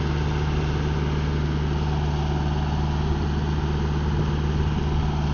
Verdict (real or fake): real